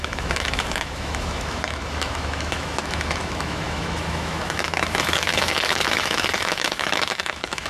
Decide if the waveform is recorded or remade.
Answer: remade